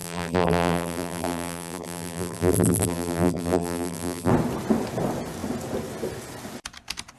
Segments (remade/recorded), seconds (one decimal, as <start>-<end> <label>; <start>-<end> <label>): 0.0-4.3 remade; 4.3-7.2 recorded